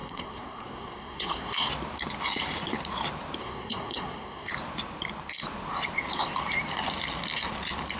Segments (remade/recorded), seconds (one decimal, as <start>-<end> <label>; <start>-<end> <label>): 0.0-1.7 remade; 1.7-3.4 recorded; 3.4-4.5 remade; 4.5-8.0 recorded

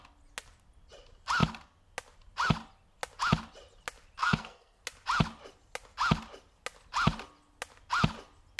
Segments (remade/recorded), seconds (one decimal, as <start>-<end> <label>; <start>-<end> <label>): 0.0-4.2 recorded; 4.2-4.8 remade; 4.8-8.6 recorded

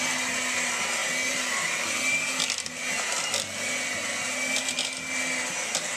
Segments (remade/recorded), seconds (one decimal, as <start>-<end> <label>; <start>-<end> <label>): 0.0-6.0 recorded

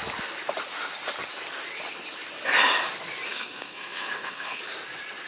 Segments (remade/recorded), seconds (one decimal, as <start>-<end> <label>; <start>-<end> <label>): 0.0-3.3 recorded; 3.3-4.6 remade; 4.6-5.3 recorded

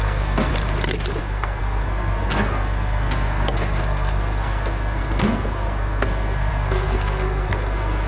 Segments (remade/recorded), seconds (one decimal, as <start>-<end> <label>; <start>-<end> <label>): 0.0-0.5 remade; 0.5-1.2 recorded; 1.2-8.1 remade

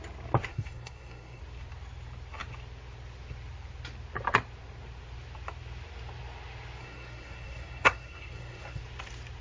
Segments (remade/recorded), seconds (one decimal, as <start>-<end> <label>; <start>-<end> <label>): 0.0-0.5 recorded; 0.5-1.4 remade; 1.4-6.8 recorded; 6.8-8.8 remade; 8.8-9.4 recorded

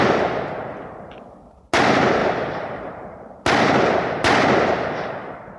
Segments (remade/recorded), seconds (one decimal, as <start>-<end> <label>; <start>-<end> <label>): 0.0-5.6 recorded

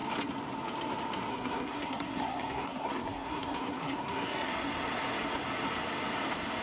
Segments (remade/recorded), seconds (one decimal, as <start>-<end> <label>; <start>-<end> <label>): 0.0-1.3 recorded; 1.3-4.5 remade; 4.5-6.6 recorded